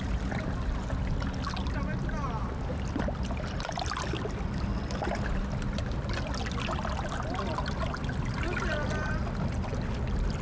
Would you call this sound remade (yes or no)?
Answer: no